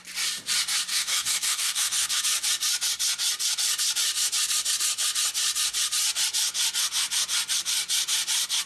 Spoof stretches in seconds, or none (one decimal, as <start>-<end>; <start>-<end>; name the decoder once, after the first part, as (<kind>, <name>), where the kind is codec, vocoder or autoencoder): 0.9-2.2 (codec, DAC)